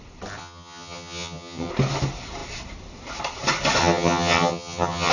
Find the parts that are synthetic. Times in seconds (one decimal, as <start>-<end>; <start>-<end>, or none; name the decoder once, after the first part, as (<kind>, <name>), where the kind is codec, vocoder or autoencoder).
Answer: 0.4-1.7 (vocoder, HiFi-GAN); 3.8-5.1